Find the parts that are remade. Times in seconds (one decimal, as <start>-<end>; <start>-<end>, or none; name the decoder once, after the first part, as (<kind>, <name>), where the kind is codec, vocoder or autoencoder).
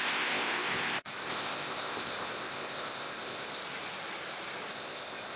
0.0-3.6 (codec, ZipCodec); 4.7-5.4